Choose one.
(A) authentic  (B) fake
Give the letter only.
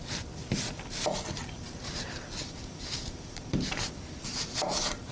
B